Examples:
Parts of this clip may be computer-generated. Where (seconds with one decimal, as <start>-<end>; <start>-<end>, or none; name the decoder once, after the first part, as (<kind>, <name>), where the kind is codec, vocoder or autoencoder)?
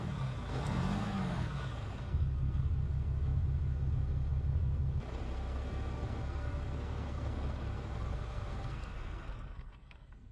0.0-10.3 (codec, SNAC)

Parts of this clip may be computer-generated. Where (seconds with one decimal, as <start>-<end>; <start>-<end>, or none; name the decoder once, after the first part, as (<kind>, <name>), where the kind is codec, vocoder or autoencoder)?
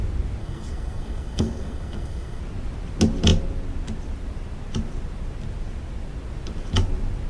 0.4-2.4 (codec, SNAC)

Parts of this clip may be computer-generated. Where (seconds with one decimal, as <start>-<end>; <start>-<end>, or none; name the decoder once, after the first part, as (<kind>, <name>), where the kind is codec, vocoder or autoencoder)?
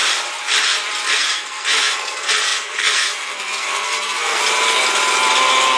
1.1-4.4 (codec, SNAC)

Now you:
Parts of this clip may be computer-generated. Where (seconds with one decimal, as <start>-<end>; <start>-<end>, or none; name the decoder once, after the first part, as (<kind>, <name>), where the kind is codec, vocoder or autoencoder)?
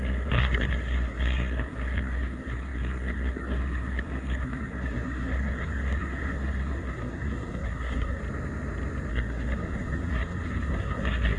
0.0-8.2 (codec, SNAC); 9.1-11.4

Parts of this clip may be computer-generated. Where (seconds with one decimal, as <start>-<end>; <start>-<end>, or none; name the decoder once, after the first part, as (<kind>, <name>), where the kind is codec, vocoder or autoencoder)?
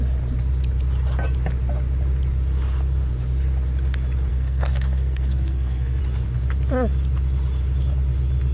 4.3-6.0 (codec, SNAC)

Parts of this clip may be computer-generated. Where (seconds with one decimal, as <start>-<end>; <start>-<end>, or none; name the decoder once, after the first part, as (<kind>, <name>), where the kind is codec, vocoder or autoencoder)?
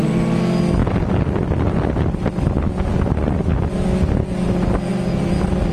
none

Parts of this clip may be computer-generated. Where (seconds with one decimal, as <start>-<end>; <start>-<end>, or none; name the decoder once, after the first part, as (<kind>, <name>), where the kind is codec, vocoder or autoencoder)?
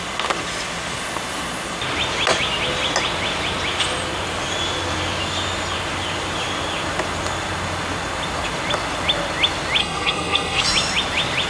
9.8-10.6 (codec, SNAC)